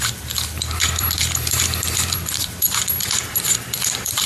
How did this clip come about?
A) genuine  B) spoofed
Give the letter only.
B